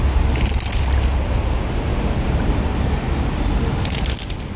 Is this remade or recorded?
recorded